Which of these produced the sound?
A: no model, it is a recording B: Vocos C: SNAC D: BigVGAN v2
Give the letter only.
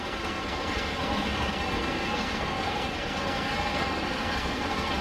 C